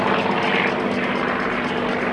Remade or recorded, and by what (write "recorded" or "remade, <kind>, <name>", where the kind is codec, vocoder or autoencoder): recorded